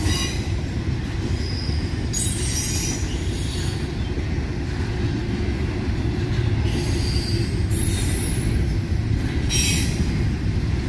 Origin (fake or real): real